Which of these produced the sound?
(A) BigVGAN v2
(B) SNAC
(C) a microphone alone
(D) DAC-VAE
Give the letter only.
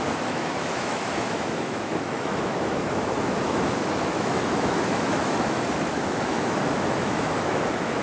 D